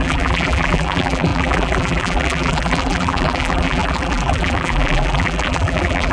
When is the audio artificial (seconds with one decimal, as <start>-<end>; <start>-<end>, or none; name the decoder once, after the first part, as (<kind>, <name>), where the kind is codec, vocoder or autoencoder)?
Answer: 0.0-6.1 (vocoder, BigVGAN v2)